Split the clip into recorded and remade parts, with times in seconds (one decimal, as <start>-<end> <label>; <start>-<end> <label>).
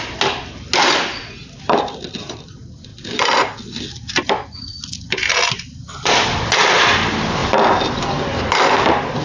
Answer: 0.0-9.2 recorded